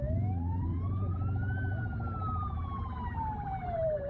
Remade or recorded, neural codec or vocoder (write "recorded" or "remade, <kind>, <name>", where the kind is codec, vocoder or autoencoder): remade, vocoder, BigVGAN v2